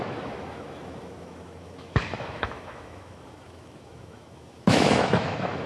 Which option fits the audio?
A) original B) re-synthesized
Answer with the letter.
B